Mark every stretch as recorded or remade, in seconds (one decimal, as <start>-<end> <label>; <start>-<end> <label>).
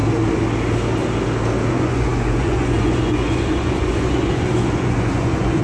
0.0-1.7 recorded; 1.7-5.6 remade